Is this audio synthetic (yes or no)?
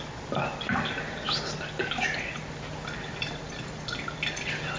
no